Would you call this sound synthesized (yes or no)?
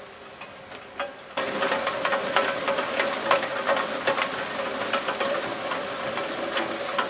no